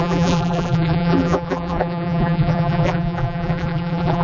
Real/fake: fake